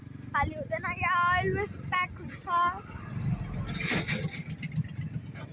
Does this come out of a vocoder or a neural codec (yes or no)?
no